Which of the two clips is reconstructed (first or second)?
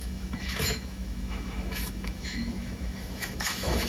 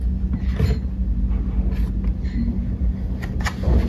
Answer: first